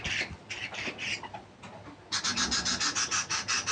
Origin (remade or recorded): remade